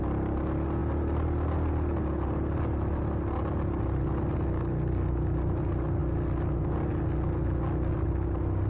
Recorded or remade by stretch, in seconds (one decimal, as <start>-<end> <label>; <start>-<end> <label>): 0.0-8.7 recorded